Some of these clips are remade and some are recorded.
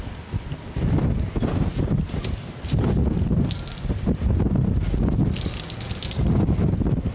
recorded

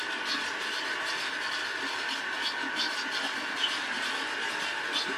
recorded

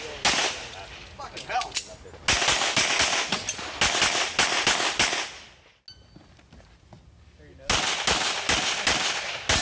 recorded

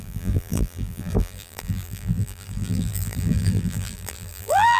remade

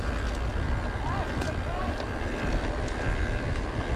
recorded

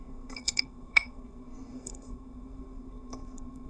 remade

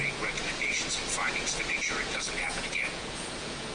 remade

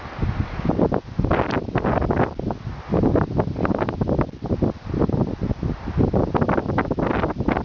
recorded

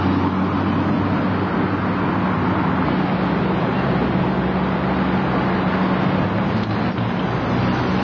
recorded